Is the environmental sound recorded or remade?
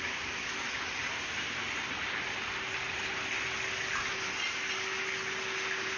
recorded